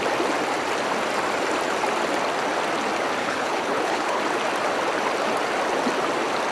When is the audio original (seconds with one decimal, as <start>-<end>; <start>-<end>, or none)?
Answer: 0.0-3.2; 4.2-6.5